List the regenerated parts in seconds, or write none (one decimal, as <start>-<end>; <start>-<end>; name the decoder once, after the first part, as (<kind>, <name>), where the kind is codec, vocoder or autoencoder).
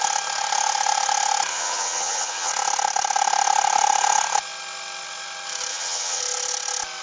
1.5-2.5 (vocoder, HiFi-GAN); 5.7-6.2